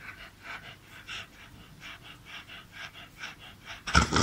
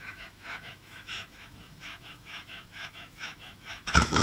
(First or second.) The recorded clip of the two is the first